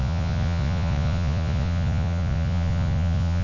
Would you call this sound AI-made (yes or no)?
yes